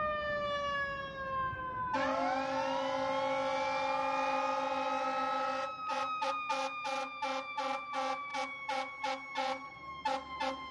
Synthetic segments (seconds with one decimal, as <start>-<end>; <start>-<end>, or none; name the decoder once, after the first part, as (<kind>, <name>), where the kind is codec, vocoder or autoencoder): none